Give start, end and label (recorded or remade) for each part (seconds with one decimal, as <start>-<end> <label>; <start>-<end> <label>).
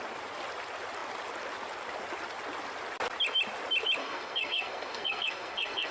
0.0-4.0 recorded; 4.0-5.9 remade